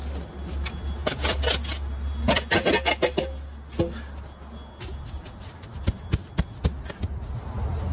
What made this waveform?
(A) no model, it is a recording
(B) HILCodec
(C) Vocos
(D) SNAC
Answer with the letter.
A